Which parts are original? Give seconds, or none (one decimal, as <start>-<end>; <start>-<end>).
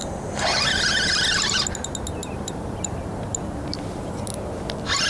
0.0-2.2; 3.0-5.1